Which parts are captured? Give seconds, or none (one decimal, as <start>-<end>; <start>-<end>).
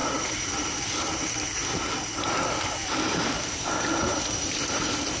1.6-3.9